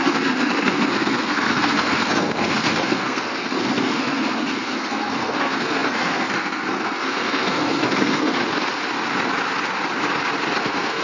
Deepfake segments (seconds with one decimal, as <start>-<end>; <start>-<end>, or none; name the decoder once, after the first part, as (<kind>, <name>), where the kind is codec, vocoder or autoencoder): 0.0-8.4 (codec, SNAC); 10.6-11.0